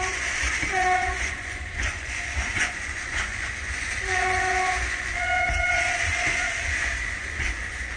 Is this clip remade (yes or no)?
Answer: yes